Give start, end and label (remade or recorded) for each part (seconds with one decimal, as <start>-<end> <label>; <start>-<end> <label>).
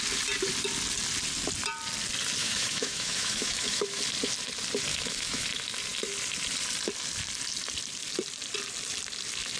0.0-2.4 recorded; 2.4-4.0 remade; 4.0-4.9 recorded; 4.9-5.5 remade; 5.5-9.6 recorded